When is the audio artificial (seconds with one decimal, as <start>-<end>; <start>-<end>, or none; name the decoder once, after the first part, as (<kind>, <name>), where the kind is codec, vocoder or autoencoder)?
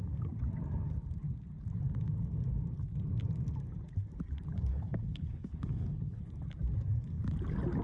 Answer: 4.7-6.2 (codec, HILCodec)